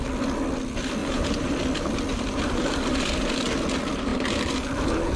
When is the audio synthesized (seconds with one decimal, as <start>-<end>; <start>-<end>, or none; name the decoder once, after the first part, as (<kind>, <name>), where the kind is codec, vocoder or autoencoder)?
1.0-1.5 (vocoder, BigVGAN v2); 2.1-3.5

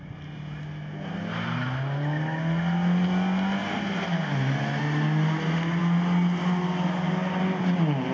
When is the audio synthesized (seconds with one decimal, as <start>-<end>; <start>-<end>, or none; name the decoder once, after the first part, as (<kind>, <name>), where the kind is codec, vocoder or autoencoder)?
none

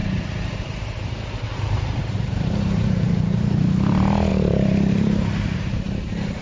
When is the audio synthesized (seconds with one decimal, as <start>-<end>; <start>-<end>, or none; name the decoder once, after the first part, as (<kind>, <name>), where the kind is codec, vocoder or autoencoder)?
0.0-3.8 (vocoder, BigVGAN v2); 4.3-6.4

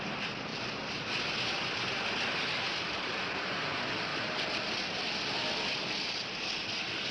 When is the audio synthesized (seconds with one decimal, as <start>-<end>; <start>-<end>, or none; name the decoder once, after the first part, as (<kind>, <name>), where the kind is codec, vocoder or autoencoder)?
4.1-5.7 (vocoder, BigVGAN v2)

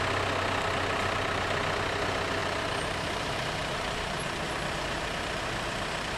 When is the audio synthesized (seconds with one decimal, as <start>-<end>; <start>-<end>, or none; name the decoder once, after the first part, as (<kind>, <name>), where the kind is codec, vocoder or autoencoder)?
2.4-6.2 (vocoder, BigVGAN v2)

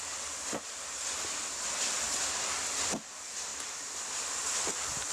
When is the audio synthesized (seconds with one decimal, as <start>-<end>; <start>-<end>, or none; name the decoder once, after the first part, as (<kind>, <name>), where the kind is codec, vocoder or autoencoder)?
none

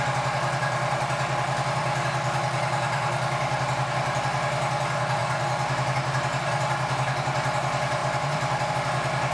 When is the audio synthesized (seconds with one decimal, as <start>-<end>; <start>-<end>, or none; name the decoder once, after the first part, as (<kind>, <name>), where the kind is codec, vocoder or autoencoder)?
8.0-8.7 (vocoder, BigVGAN v2)

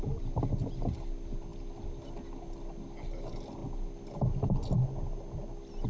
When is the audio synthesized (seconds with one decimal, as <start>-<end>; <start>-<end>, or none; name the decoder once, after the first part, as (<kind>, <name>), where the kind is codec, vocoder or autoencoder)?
none